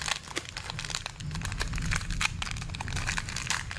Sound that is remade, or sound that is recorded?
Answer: recorded